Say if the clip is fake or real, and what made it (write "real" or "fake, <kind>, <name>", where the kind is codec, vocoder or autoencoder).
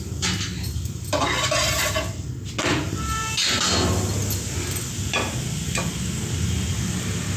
real